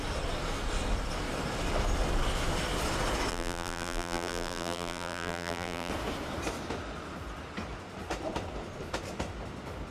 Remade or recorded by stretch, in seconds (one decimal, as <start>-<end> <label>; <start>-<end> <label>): 0.0-3.3 recorded; 3.3-5.9 remade; 5.9-9.9 recorded